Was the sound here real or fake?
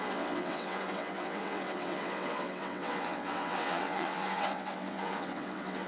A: fake